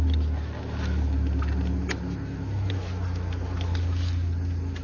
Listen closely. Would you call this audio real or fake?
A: real